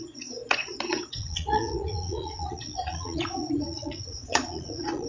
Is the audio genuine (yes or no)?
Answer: no